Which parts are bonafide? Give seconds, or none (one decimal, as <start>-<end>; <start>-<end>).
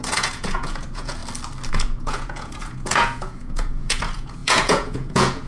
1.2-1.7